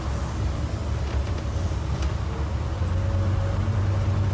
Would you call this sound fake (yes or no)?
no